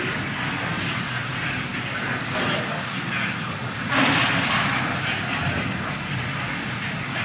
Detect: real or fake real